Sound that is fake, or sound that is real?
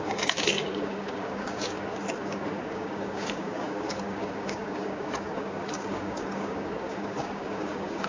fake